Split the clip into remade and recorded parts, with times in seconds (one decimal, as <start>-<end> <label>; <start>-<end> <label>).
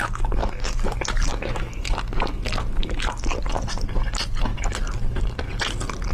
0.0-0.4 recorded; 0.4-0.9 remade; 0.9-1.3 recorded; 1.3-1.9 remade; 1.9-6.1 recorded